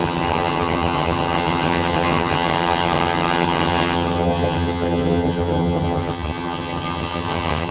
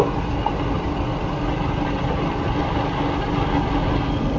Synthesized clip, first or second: first